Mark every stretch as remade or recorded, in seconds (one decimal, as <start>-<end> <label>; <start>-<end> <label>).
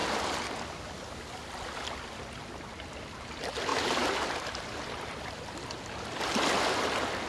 0.0-3.7 recorded; 3.7-6.5 remade; 6.5-7.3 recorded